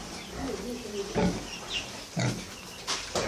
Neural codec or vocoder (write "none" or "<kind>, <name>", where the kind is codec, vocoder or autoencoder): vocoder, BigVGAN v2